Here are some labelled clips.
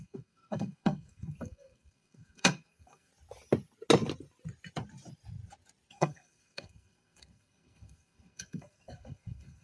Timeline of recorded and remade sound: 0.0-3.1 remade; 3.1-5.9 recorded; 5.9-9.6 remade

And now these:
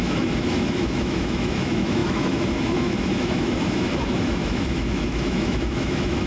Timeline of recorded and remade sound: 0.0-6.3 remade